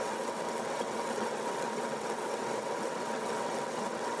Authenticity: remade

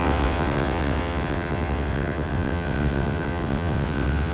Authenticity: remade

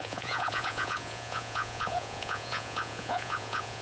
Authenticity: remade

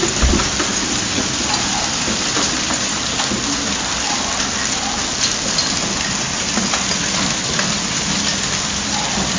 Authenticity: recorded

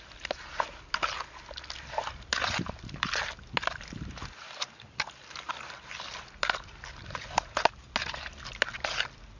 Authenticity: recorded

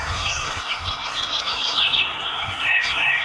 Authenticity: remade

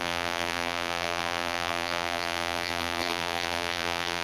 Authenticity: remade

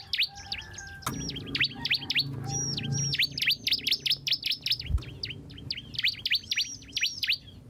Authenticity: recorded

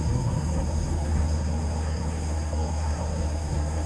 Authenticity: remade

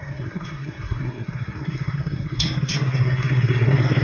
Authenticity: remade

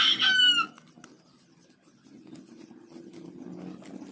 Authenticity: recorded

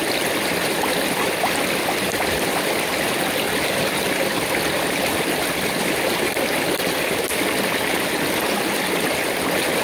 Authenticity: recorded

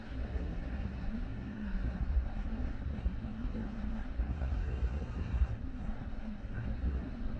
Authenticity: remade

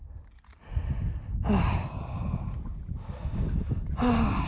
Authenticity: recorded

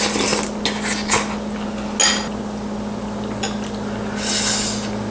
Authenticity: recorded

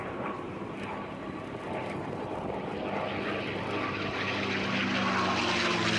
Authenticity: recorded